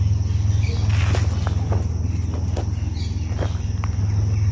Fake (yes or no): no